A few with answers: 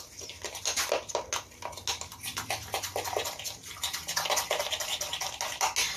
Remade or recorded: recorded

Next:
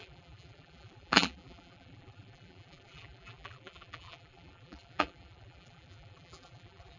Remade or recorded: remade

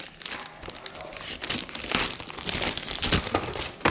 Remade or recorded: recorded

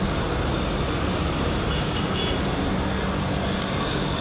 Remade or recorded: recorded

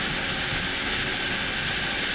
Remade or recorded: recorded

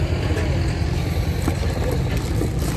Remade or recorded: recorded